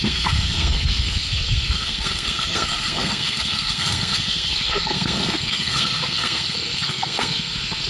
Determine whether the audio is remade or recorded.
remade